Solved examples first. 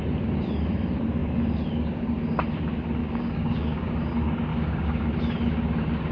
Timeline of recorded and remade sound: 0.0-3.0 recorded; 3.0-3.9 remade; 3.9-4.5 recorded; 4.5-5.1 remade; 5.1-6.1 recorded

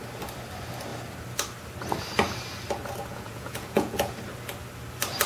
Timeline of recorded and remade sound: 0.0-3.1 recorded; 3.1-4.1 remade; 4.1-5.3 recorded

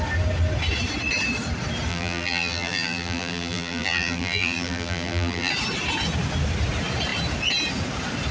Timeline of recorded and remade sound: 0.0-1.9 recorded; 1.9-5.5 remade; 5.5-8.3 recorded

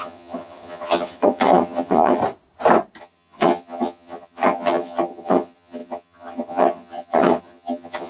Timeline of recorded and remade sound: 0.0-2.2 remade; 2.2-3.0 recorded; 3.0-8.1 remade

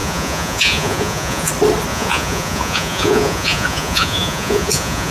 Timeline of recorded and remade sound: 0.0-1.5 remade; 1.5-1.9 recorded; 1.9-5.1 remade

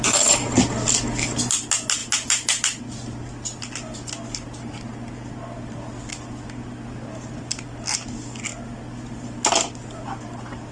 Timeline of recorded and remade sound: 0.0-10.7 recorded

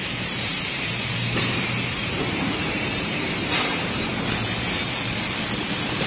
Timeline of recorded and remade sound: 0.0-4.1 remade; 4.1-5.6 recorded; 5.6-6.1 remade